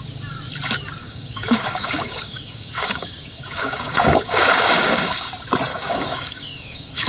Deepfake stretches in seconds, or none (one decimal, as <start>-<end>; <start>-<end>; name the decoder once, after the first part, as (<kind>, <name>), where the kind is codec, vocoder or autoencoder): 1.0-5.3 (codec, DAC); 5.7-7.1